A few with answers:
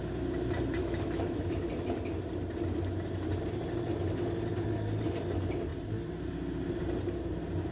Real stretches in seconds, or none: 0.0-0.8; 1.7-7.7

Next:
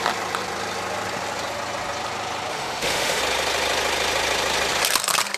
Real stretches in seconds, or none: 0.0-2.5; 3.2-5.4